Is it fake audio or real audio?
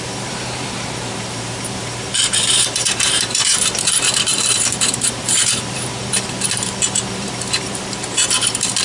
fake